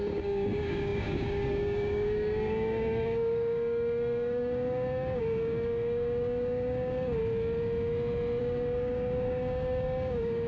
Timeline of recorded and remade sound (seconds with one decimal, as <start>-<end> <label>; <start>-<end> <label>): 0.0-7.2 remade; 7.2-8.4 recorded; 8.4-10.5 remade